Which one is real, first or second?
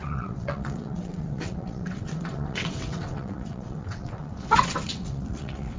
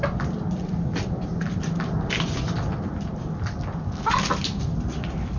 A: second